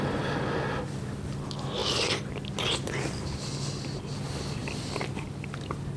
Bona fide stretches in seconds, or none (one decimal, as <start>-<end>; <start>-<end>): 0.0-4.6; 5.3-6.0

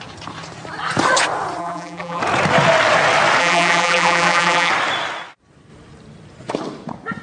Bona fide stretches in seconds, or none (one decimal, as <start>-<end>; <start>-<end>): 0.0-1.6; 2.2-3.4; 4.7-7.2

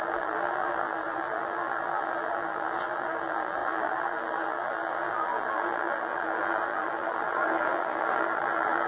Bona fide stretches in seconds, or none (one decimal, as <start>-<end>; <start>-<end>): none

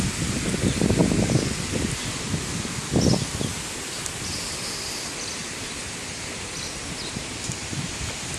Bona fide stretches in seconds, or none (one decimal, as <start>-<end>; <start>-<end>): 0.0-5.4; 7.9-8.4

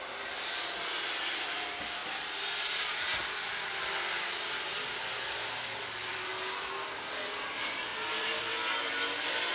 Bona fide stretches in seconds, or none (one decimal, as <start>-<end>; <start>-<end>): 2.0-5.8; 6.3-7.2

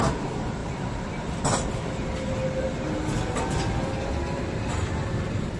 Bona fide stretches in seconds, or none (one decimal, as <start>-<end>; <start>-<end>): 0.0-5.6

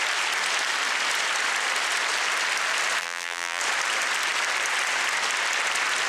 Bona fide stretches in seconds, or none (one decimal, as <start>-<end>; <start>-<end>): 0.0-3.0; 3.6-6.1